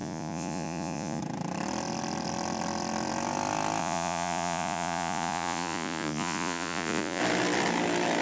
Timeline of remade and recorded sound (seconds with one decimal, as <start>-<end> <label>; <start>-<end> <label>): 0.0-1.2 remade; 1.2-3.8 recorded; 3.8-7.2 remade; 7.2-8.2 recorded